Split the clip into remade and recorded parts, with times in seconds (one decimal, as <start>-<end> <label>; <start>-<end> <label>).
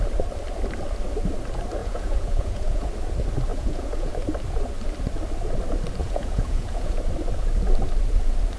0.0-1.8 recorded; 1.8-2.9 remade; 2.9-3.5 recorded; 3.5-4.1 remade; 4.1-6.0 recorded; 6.0-7.0 remade; 7.0-8.6 recorded